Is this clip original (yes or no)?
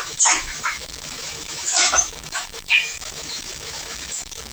no